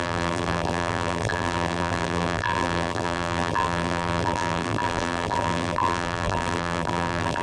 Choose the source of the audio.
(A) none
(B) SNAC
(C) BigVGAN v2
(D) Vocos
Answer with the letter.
C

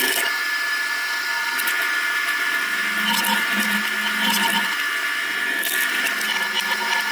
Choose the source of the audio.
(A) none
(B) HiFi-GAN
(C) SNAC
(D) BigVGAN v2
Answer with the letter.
A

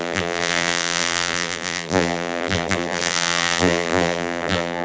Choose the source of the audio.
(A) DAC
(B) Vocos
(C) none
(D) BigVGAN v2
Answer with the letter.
D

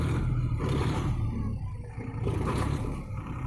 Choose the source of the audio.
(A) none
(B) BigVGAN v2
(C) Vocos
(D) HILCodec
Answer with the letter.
B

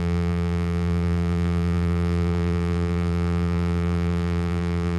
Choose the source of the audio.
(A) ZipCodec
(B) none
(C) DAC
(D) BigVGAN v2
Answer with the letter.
D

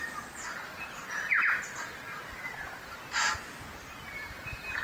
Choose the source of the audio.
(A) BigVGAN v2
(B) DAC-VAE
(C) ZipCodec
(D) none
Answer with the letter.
A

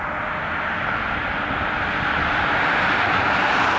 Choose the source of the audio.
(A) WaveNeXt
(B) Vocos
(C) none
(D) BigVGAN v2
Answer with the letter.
C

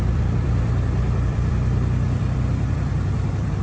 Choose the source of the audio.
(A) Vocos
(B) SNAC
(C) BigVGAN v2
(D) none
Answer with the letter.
C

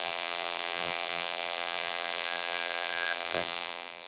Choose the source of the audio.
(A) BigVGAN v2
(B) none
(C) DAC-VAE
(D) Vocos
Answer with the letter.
A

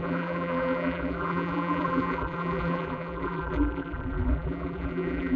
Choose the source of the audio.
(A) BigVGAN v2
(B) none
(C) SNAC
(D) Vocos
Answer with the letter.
A